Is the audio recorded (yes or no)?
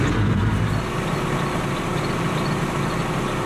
yes